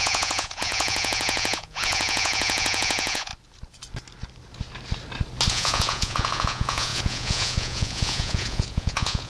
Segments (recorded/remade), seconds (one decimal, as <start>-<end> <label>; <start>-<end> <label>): 0.0-3.3 remade; 3.3-5.5 recorded; 5.5-9.3 remade